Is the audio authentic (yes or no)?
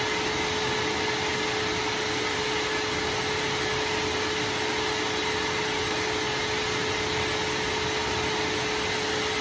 yes